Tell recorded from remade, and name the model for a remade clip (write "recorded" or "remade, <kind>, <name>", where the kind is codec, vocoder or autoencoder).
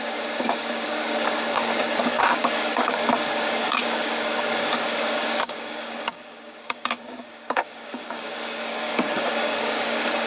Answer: remade, codec, DAC